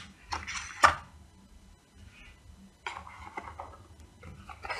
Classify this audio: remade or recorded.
recorded